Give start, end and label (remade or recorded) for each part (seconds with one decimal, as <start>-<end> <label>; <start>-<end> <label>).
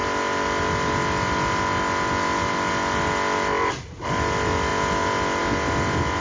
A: 0.0-6.2 recorded